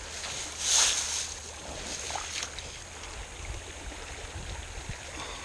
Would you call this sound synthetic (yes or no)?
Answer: no